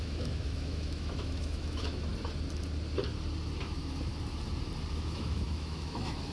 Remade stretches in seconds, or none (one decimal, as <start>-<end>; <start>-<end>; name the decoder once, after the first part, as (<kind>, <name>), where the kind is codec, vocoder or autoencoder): 0.0-2.1 (autoencoder, DAC-VAE); 3.6-4.1; 4.9-6.3